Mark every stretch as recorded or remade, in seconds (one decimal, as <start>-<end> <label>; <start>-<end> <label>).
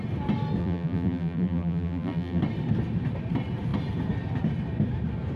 0.0-0.6 recorded; 0.6-2.4 remade; 2.4-5.4 recorded